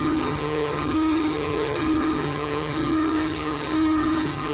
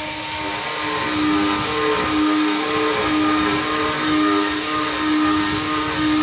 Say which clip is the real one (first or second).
second